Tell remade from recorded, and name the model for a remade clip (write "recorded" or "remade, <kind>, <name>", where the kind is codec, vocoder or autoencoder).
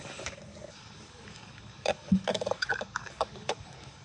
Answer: remade, codec, DAC